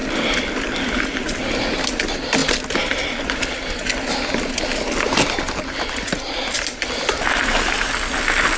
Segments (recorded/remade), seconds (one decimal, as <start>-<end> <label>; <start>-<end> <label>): 0.0-8.6 recorded